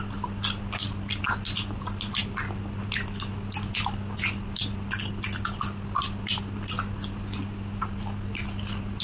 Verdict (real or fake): real